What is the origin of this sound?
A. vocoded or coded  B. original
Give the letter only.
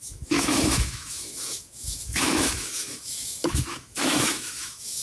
A